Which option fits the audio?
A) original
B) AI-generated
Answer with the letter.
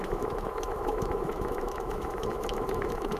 B